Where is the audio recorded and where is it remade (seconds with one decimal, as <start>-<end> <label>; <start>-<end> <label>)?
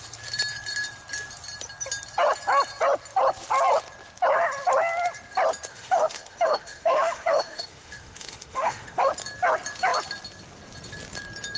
0.0-5.7 recorded; 5.7-9.1 remade; 9.1-11.6 recorded